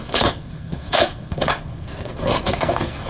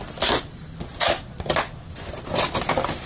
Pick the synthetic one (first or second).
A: first